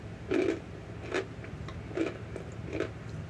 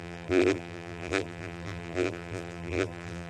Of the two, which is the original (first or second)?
first